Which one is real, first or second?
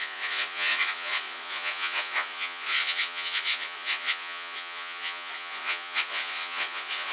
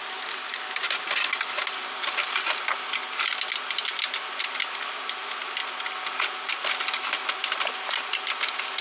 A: second